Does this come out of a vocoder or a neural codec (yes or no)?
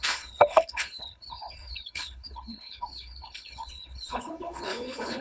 yes